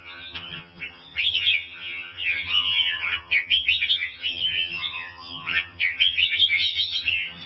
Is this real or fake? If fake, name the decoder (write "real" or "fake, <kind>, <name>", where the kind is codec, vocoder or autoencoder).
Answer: fake, vocoder, HiFi-GAN